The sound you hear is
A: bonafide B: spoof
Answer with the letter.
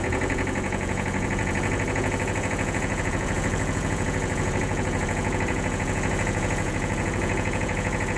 B